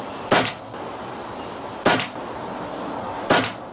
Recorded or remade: recorded